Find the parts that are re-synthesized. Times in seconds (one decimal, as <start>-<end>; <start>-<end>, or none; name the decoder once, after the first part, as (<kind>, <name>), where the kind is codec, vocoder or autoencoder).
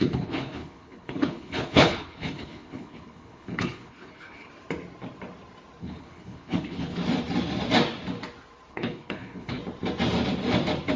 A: 0.0-4.5 (codec, HILCodec); 5.8-7.0; 8.7-9.6